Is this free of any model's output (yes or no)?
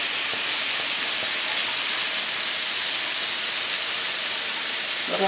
yes